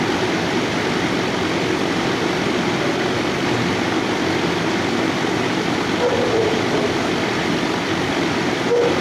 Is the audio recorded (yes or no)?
yes